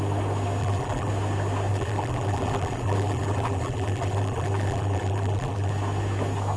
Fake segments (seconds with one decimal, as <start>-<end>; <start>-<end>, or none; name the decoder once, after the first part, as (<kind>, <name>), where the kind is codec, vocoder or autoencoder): 0.6-1.1 (vocoder, BigVGAN v2); 1.7-5.7